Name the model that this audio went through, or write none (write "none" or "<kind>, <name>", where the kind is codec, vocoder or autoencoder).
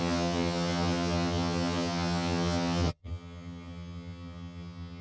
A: vocoder, HiFi-GAN